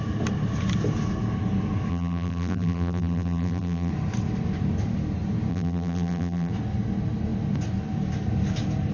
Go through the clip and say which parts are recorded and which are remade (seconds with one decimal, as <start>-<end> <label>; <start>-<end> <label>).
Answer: 0.0-1.9 recorded; 1.9-3.9 remade; 3.9-5.5 recorded; 5.5-6.5 remade; 6.5-8.9 recorded